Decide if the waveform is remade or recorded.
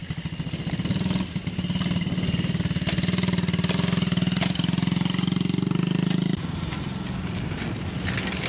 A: recorded